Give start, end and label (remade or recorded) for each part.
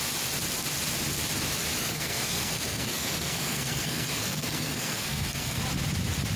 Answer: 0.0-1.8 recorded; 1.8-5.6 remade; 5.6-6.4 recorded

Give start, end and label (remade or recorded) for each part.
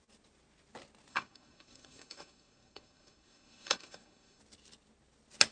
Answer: 0.0-1.1 recorded; 1.1-4.4 remade; 4.4-5.5 recorded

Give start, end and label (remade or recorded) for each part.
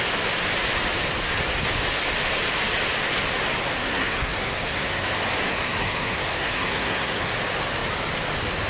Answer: 0.0-3.7 recorded; 3.7-5.1 remade; 5.1-5.5 recorded; 5.5-7.3 remade; 7.3-8.7 recorded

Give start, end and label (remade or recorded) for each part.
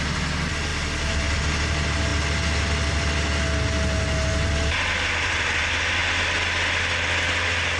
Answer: 0.0-7.8 recorded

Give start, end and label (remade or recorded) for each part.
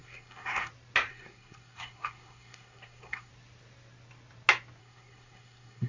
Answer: 0.0-0.7 remade; 0.7-1.1 recorded; 1.1-3.3 remade; 3.3-4.8 recorded; 4.8-5.9 remade